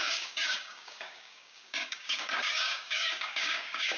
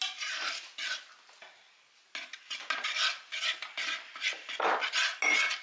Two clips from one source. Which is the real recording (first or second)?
second